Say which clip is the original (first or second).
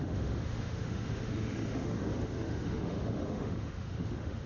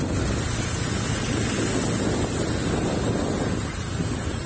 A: second